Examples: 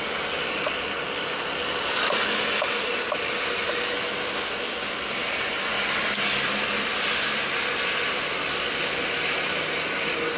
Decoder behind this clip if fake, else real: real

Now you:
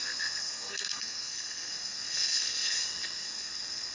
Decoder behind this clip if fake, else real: fake, codec, SNAC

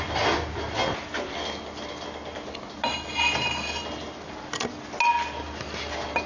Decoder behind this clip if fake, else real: real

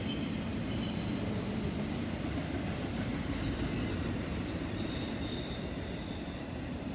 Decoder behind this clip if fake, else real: real